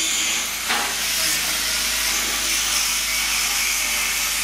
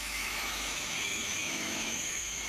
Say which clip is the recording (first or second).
first